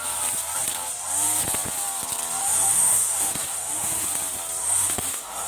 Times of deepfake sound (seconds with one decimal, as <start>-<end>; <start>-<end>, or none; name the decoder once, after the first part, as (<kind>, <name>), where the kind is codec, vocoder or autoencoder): 2.4-4.1 (autoencoder, DAC-VAE); 4.6-5.5